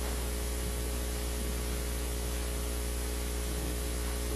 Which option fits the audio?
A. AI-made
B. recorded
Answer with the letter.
B